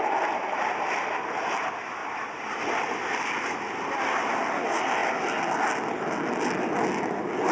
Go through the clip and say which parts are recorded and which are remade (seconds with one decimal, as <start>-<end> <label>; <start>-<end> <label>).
0.0-7.5 recorded